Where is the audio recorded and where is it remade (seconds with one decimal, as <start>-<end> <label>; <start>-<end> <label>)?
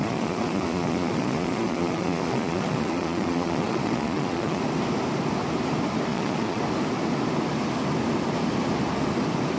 0.0-4.6 remade; 4.6-6.1 recorded; 6.1-6.6 remade; 6.6-9.6 recorded